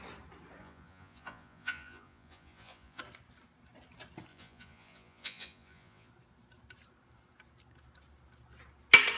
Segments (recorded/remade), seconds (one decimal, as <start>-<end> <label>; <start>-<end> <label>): 0.0-0.6 recorded; 0.6-3.0 remade; 3.0-4.3 recorded; 4.3-6.1 remade; 6.1-9.2 recorded